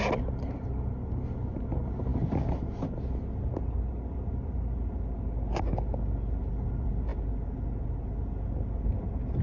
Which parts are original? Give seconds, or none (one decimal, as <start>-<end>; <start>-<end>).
0.0-9.4